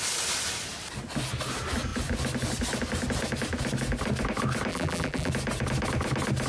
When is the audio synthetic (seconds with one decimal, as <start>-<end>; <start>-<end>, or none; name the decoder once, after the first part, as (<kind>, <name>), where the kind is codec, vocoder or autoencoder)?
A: 4.7-5.3 (vocoder, BigVGAN v2)